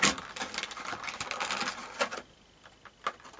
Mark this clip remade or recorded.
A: recorded